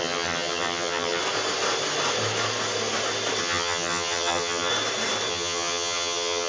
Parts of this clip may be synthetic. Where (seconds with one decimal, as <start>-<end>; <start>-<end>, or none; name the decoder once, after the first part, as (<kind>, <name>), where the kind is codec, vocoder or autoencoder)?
0.0-1.2 (vocoder, HiFi-GAN); 3.4-4.7; 5.3-6.5